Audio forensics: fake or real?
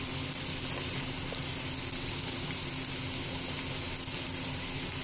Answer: real